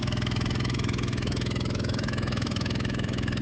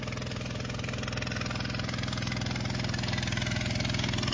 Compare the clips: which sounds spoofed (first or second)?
first